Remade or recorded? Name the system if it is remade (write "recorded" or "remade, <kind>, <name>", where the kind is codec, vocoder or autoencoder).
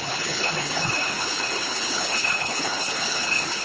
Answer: remade, codec, HILCodec